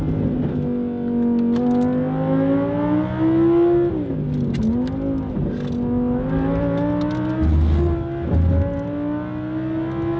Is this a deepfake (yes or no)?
no